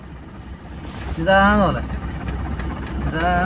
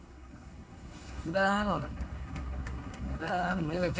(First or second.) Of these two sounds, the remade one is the second